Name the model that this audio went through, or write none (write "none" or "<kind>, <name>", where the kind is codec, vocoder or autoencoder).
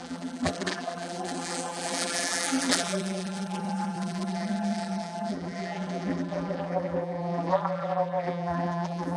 vocoder, BigVGAN v2